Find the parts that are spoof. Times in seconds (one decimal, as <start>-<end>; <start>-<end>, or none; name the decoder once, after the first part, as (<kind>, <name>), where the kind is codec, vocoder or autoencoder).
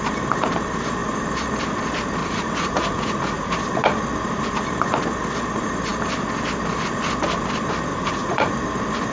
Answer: 2.2-3.5 (vocoder, Vocos); 7.9-8.5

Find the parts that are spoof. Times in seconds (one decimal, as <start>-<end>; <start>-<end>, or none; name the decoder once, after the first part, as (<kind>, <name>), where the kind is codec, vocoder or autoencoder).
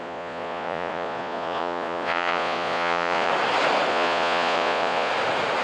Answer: 0.0-3.3 (vocoder, Vocos); 3.9-5.1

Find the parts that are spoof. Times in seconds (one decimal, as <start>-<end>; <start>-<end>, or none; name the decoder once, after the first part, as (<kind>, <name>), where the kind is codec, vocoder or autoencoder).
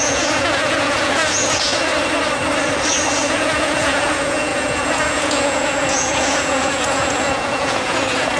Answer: 0.0-1.7 (vocoder, Vocos); 3.3-8.4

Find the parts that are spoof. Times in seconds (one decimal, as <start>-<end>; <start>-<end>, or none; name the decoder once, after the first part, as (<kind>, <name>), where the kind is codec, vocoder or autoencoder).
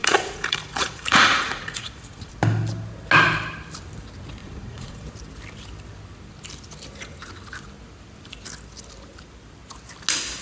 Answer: 0.0-2.3 (vocoder, Vocos); 4.4-5.1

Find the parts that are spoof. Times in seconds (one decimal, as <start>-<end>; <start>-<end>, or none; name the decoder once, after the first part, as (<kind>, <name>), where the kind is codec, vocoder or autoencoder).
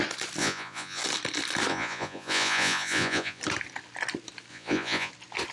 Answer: 0.4-1.0 (vocoder, Vocos); 1.7-3.4; 4.5-5.1